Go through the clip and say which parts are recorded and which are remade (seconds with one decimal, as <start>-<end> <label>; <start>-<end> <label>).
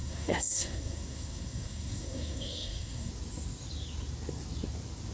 0.0-3.1 remade; 3.1-5.1 recorded